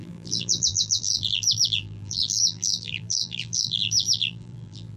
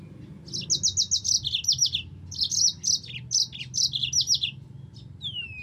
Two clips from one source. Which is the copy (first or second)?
first